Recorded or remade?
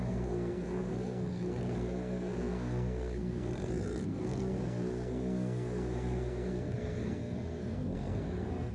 remade